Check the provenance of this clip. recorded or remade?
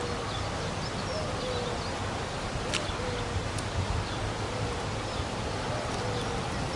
recorded